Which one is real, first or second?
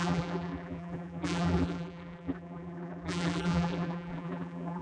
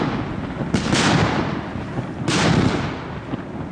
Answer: second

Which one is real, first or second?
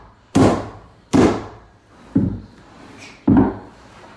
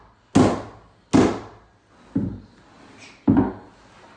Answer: second